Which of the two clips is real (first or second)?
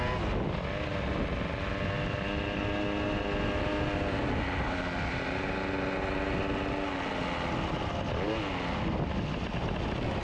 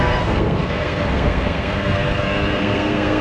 first